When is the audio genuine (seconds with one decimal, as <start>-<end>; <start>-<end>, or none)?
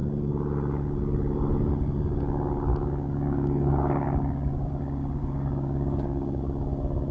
0.0-2.7; 4.7-5.2; 6.4-7.1